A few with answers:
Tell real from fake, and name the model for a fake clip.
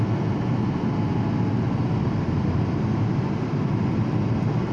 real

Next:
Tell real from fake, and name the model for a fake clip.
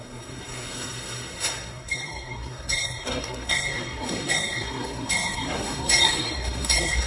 fake, codec, SNAC